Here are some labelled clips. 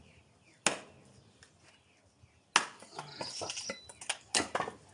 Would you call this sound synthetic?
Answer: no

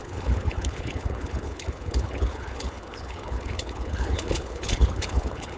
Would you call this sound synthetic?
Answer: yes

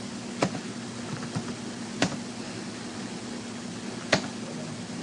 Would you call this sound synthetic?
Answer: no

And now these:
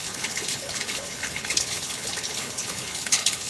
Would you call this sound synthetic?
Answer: yes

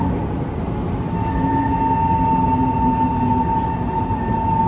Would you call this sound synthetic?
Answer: no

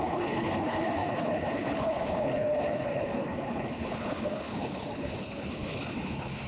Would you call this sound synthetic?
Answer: yes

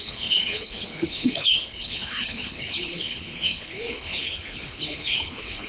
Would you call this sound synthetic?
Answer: yes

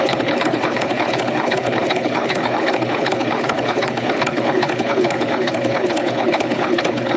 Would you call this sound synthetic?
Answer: yes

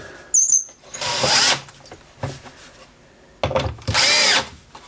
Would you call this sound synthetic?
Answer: no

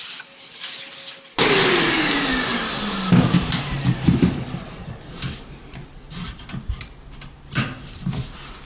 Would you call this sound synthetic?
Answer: no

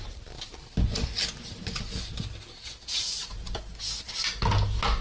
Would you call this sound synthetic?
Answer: no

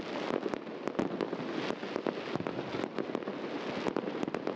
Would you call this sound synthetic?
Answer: no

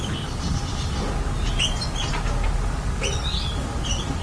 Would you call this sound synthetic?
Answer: no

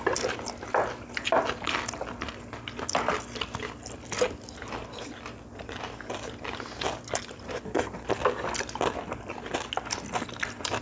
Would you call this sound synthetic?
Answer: no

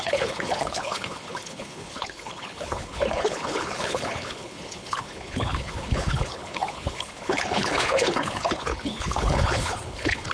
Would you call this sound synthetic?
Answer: yes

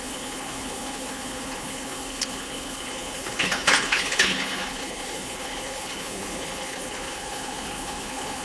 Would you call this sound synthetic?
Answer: yes